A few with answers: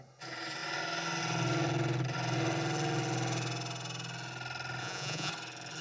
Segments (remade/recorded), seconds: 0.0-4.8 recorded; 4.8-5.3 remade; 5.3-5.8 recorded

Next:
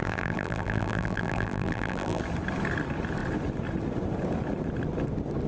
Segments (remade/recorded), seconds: 0.0-2.2 remade; 2.2-5.5 recorded

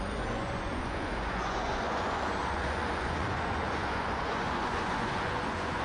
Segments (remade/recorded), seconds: 0.0-5.8 remade

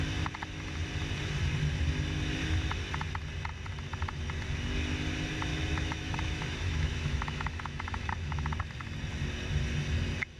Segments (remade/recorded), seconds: 0.0-5.5 recorded; 5.5-8.1 remade; 8.1-10.4 recorded

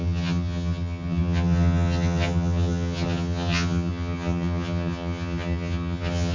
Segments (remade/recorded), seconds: 0.0-6.3 remade

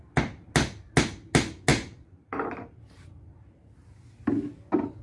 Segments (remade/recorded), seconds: 0.0-1.7 recorded; 1.7-3.7 remade; 3.7-5.0 recorded

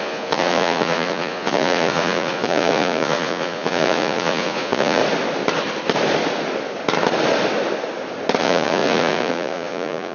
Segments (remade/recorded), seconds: 0.0-5.0 remade; 5.0-8.4 recorded; 8.4-10.1 remade